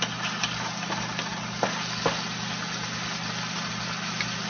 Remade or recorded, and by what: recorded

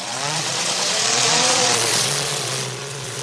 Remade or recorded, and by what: remade, vocoder, Vocos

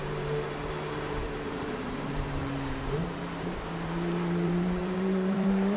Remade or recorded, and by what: remade, vocoder, BigVGAN v2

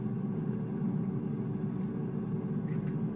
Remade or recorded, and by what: recorded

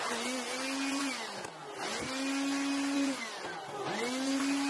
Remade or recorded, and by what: recorded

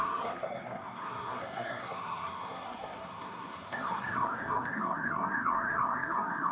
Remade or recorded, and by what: remade, codec, SNAC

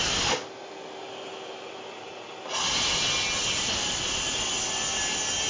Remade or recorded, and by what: recorded